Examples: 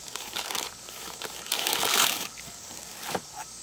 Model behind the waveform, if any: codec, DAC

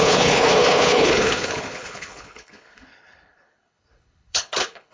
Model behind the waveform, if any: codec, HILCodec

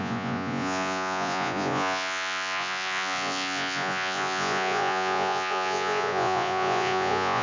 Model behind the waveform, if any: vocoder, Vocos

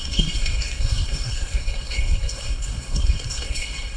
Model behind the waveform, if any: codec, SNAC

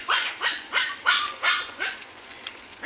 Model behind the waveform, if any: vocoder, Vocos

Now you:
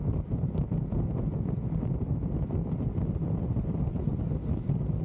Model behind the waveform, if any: none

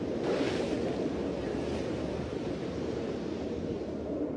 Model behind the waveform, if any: none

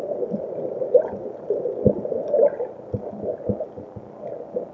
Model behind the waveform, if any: none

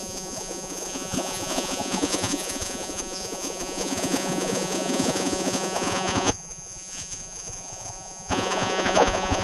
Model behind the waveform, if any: vocoder, Vocos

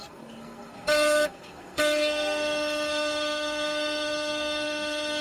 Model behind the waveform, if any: codec, SNAC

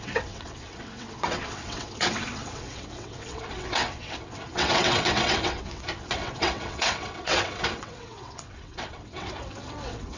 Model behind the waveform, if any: vocoder, WaveNeXt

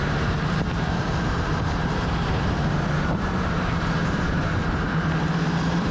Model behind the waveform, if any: vocoder, BigVGAN v2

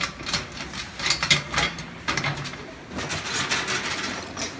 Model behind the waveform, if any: none